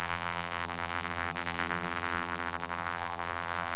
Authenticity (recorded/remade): remade